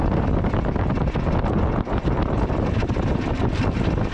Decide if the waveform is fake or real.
real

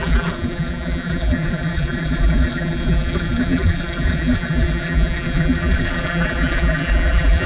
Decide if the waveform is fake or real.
fake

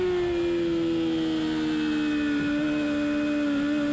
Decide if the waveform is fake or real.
real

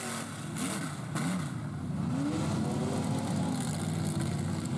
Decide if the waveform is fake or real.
real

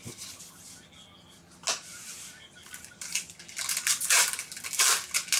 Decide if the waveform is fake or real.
real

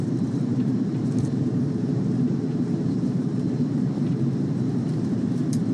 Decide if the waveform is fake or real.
fake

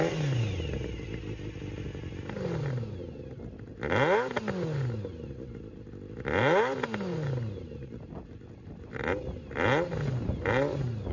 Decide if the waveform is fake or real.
real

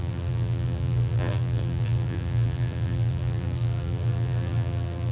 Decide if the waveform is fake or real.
fake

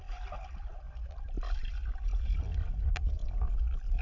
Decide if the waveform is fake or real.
real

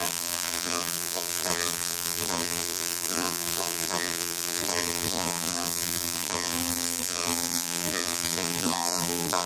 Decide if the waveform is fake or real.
fake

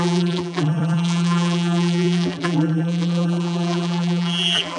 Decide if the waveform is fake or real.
fake